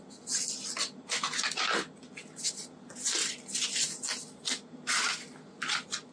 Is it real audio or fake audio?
real